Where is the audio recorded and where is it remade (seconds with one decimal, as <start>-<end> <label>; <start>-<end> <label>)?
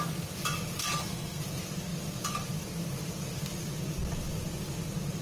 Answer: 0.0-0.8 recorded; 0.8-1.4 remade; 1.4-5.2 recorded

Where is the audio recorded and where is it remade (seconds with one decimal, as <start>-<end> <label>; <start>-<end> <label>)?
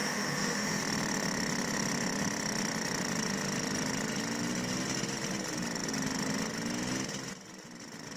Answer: 0.0-0.8 remade; 0.8-8.2 recorded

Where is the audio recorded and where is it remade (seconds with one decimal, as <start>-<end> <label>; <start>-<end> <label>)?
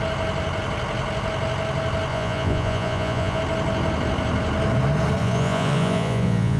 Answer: 0.0-2.1 recorded; 2.1-3.4 remade; 3.4-5.2 recorded; 5.2-6.6 remade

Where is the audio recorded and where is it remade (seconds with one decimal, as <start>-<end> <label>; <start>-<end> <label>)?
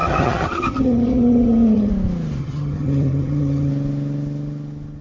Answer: 0.0-1.9 remade; 1.9-2.4 recorded; 2.4-3.7 remade; 3.7-5.0 recorded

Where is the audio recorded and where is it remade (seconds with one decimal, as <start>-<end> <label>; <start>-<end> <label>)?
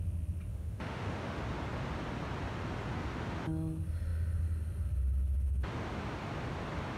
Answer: 0.0-0.5 recorded; 0.5-1.4 remade; 1.4-7.0 recorded